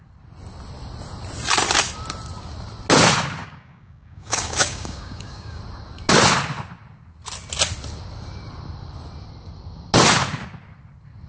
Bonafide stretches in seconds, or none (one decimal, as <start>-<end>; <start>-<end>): 0.0-3.4; 5.6-11.3